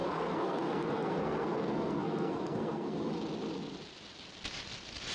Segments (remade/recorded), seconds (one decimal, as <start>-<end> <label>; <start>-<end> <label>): 0.0-3.1 remade; 3.1-5.1 recorded